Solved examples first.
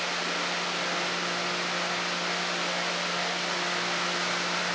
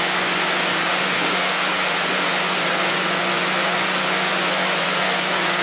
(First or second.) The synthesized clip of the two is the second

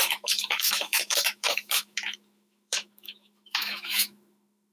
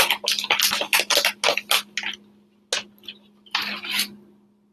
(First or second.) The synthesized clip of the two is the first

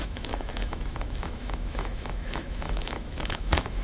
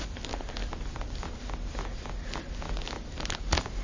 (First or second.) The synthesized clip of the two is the first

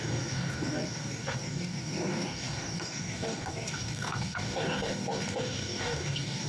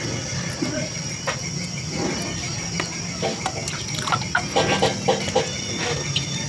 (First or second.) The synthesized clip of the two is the first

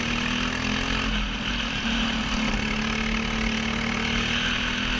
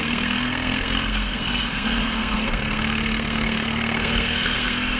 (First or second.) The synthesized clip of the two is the second